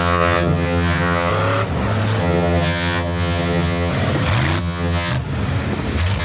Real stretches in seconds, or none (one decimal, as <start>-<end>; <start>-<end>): 1.3-2.2; 3.9-4.6; 5.1-6.2